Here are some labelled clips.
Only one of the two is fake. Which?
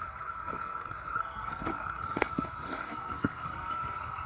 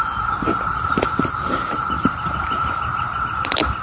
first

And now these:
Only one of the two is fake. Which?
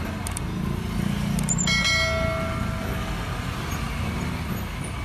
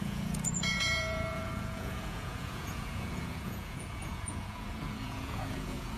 second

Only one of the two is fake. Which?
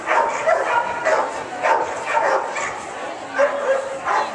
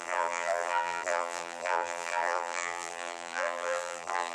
second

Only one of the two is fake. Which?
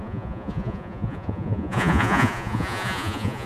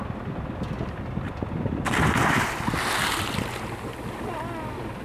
first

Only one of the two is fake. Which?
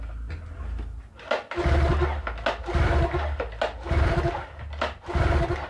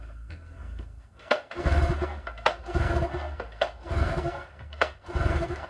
second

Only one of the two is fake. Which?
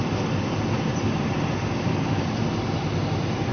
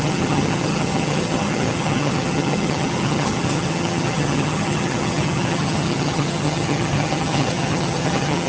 second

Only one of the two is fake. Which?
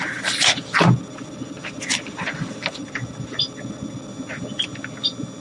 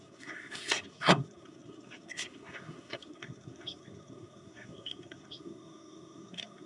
second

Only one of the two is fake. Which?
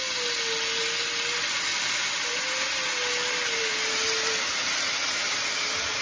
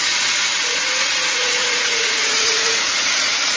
second